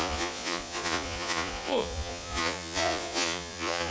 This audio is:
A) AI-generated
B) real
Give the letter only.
A